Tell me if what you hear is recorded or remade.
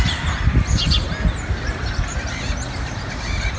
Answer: recorded